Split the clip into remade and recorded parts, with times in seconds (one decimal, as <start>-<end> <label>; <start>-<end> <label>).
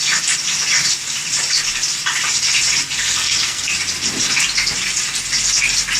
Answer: 0.0-3.0 recorded; 3.0-3.7 remade; 3.7-6.0 recorded